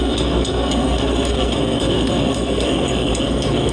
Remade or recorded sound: remade